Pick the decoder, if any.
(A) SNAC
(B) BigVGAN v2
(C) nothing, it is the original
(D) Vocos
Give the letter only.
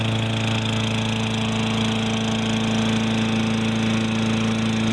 C